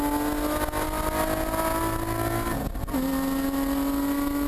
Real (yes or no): yes